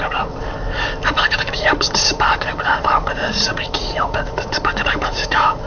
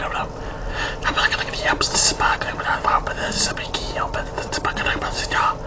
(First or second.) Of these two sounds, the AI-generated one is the first